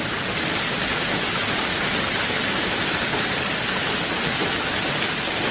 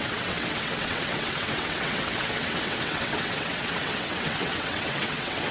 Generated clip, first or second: second